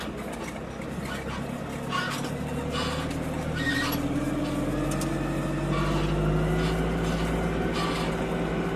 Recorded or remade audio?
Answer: recorded